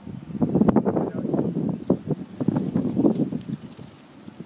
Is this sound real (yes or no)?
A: yes